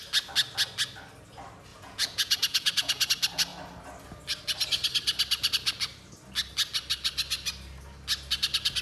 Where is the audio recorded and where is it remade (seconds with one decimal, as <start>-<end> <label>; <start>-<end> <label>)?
0.0-1.7 recorded; 1.7-3.1 remade; 3.1-8.8 recorded